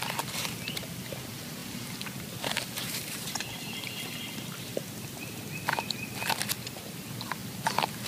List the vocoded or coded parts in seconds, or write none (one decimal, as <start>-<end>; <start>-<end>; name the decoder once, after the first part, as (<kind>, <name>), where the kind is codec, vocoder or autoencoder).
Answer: 7.4-8.1 (vocoder, BigVGAN v2)